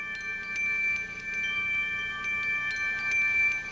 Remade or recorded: recorded